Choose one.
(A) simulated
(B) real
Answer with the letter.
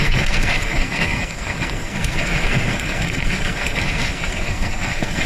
A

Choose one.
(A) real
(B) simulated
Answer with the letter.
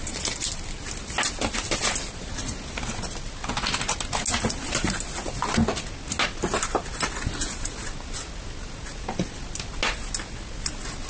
A